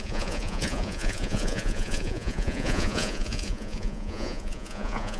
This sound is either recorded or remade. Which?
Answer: remade